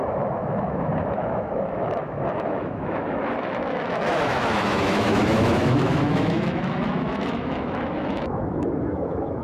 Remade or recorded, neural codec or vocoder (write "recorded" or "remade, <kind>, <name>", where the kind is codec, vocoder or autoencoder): remade, autoencoder, DAC-VAE